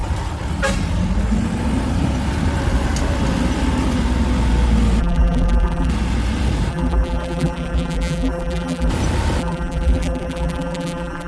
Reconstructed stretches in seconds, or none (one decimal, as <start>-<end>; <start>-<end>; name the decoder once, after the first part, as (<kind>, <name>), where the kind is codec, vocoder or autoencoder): 5.0-5.9 (vocoder, BigVGAN v2); 6.7-8.9; 9.4-11.3